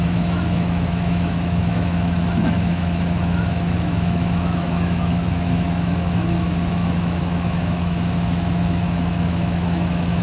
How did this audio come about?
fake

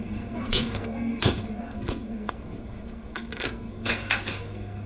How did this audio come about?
fake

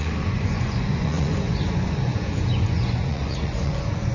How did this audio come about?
fake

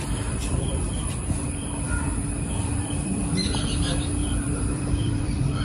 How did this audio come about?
fake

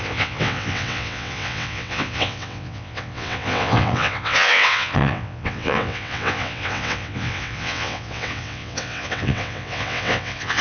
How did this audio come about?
fake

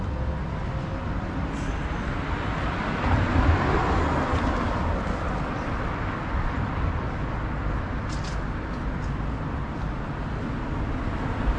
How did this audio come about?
real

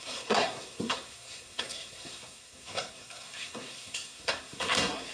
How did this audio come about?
fake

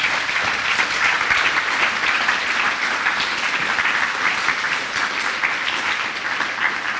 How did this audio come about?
real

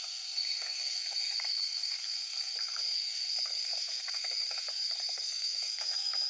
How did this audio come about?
fake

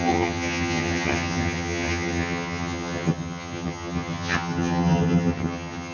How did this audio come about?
fake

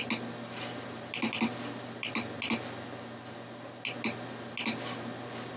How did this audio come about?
real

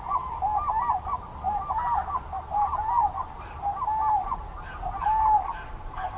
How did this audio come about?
real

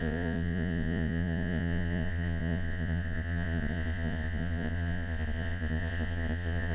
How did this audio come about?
fake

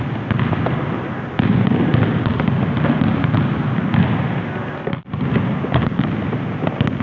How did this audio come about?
real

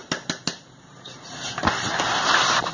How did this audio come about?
real